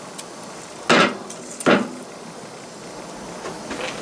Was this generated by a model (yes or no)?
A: no